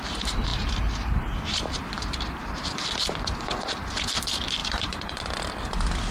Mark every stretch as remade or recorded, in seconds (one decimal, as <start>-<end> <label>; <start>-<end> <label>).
0.0-0.5 recorded; 0.5-2.4 remade; 2.4-4.6 recorded; 4.6-5.2 remade; 5.2-6.1 recorded